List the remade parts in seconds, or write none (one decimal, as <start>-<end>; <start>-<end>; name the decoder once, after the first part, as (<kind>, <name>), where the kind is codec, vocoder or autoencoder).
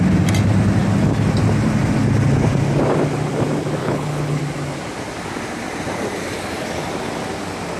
3.8-4.4 (codec, HILCodec)